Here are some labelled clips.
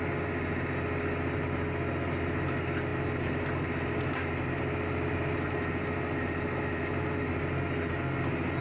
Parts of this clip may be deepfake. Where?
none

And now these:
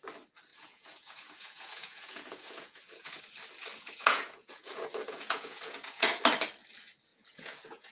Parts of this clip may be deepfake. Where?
0.5-3.2 (vocoder, Vocos); 3.7-6.2; 7.1-7.9

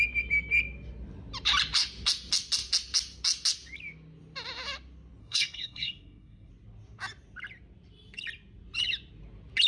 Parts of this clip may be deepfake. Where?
5.2-6.5 (codec, SNAC)

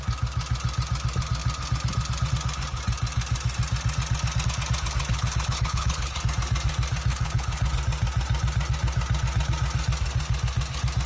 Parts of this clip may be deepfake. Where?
5.1-6.2 (codec, HILCodec); 7.1-7.7

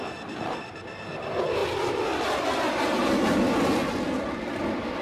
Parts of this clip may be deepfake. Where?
none

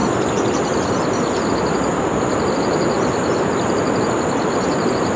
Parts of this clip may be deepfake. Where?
none

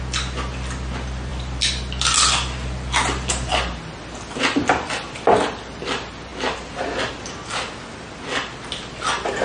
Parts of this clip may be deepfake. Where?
1.3-3.5 (vocoder, BigVGAN v2)

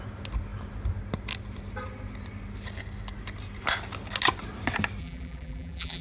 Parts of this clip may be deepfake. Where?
5.0-6.0 (vocoder, BigVGAN v2)